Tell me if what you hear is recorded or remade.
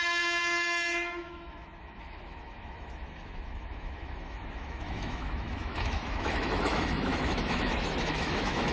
remade